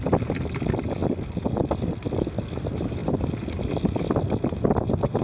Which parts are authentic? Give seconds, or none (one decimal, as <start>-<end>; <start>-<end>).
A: 0.0-3.0; 4.0-5.2